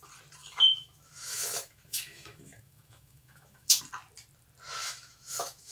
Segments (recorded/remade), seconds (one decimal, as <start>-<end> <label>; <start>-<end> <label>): 0.0-0.4 recorded; 0.4-3.8 remade; 3.8-4.8 recorded; 4.8-5.7 remade